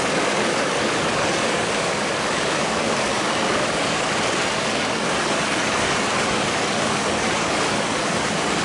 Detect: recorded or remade remade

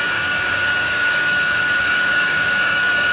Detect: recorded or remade remade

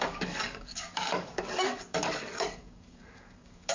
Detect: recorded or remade remade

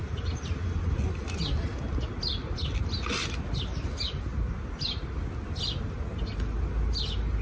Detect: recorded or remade recorded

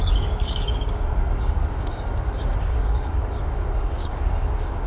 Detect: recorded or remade remade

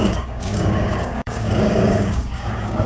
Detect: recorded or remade remade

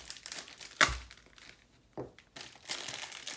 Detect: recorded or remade recorded